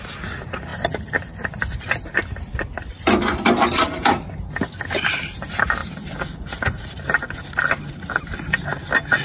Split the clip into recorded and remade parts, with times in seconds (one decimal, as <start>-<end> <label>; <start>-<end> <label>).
0.0-2.2 recorded; 2.2-4.2 remade; 4.2-5.8 recorded; 5.8-7.9 remade; 7.9-9.2 recorded